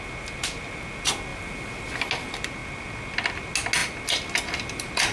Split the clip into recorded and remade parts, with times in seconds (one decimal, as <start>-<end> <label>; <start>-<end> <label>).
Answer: 0.0-5.1 recorded